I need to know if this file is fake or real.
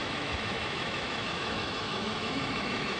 fake